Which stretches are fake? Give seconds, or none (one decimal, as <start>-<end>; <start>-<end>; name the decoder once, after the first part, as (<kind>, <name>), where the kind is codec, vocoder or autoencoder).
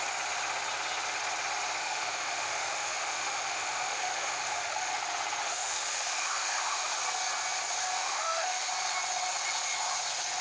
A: 1.8-5.0 (autoencoder, DAC-VAE); 5.4-7.0; 8.0-8.7